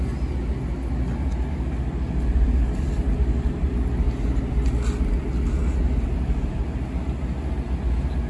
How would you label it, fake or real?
real